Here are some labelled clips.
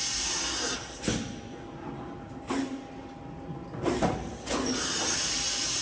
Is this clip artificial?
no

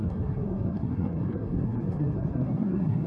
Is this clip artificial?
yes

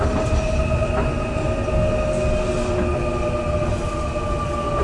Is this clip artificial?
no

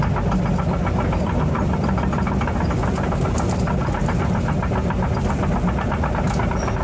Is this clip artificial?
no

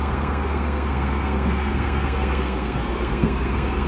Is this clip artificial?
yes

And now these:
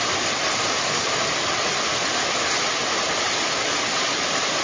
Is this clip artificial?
no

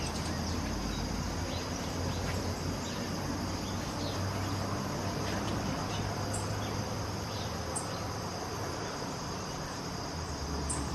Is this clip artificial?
no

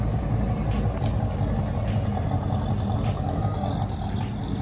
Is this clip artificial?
no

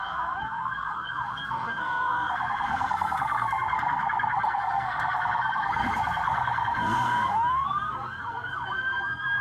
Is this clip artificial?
yes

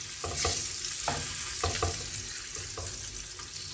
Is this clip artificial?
no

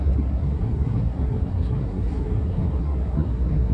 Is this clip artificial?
yes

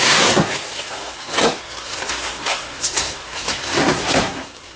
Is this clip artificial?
yes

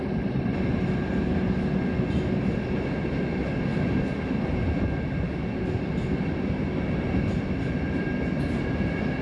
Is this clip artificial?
no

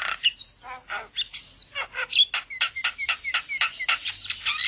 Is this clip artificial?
no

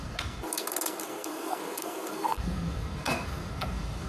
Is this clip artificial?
yes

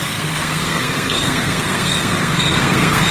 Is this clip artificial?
yes